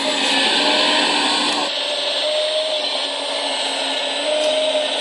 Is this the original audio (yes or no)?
yes